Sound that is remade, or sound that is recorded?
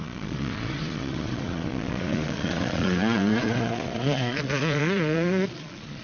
remade